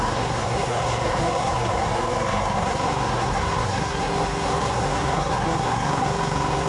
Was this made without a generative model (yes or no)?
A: no